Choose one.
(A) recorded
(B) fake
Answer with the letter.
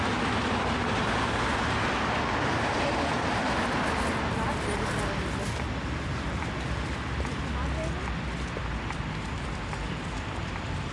A